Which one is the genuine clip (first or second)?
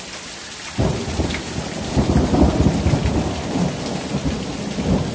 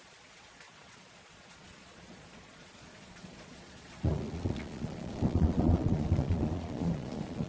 first